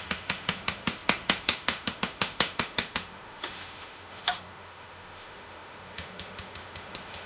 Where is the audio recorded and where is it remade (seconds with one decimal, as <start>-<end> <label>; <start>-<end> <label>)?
0.0-7.3 remade